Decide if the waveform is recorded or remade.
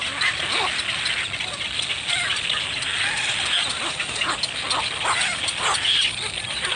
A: recorded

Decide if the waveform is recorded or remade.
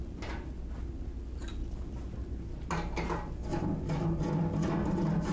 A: recorded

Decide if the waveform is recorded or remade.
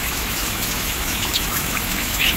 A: remade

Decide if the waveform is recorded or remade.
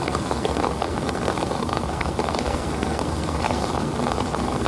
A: remade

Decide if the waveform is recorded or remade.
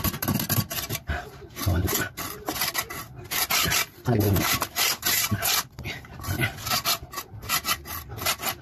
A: recorded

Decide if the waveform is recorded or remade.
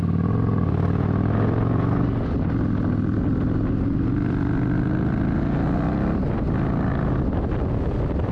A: recorded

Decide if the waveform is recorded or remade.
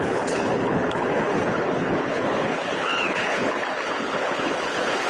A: remade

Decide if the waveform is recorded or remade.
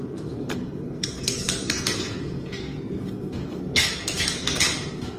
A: remade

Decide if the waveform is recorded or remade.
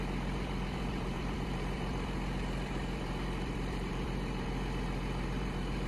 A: remade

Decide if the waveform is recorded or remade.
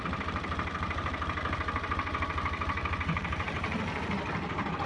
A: remade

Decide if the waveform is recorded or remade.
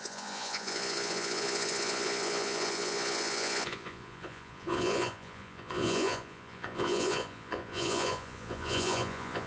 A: remade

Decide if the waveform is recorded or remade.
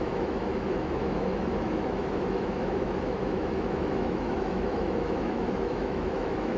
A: remade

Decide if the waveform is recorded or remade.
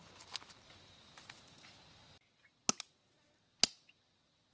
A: recorded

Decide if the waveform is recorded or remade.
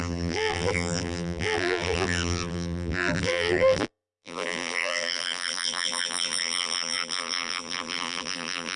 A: remade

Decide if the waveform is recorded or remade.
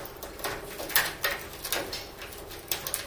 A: recorded